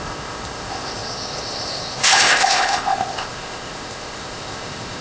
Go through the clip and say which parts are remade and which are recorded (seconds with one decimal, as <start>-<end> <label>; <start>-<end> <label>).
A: 0.0-5.0 remade